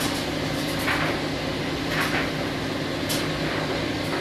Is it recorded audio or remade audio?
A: recorded